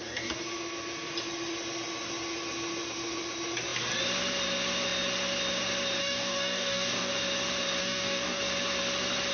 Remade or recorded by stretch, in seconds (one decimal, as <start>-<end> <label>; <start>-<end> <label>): 0.0-6.0 recorded; 6.0-7.1 remade; 7.1-7.8 recorded; 7.8-8.4 remade; 8.4-9.3 recorded